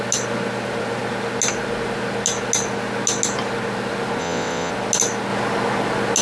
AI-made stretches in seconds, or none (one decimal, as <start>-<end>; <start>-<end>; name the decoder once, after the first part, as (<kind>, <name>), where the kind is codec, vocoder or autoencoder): 4.2-4.7 (vocoder, WaveNeXt)